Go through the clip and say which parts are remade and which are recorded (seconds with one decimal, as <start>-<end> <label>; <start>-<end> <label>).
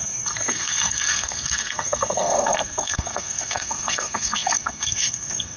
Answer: 0.0-5.6 remade